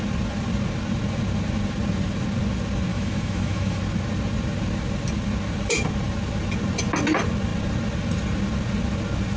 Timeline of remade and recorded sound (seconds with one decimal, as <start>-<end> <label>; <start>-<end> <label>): 0.0-2.9 recorded; 2.9-3.8 remade; 3.8-9.4 recorded